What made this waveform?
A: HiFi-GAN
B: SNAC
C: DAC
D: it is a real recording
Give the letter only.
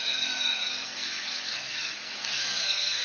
B